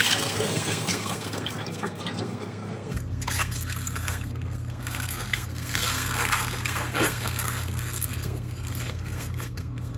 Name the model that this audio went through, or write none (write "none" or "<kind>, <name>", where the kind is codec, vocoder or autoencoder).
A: codec, SNAC